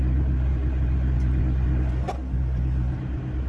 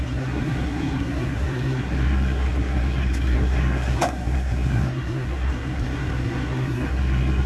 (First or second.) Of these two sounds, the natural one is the first